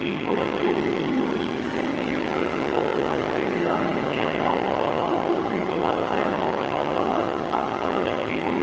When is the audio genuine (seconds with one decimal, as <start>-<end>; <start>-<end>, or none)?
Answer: none